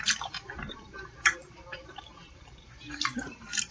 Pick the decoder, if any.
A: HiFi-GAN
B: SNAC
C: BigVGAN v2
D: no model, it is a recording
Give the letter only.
C